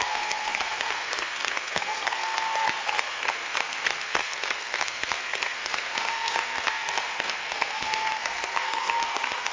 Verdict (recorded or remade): remade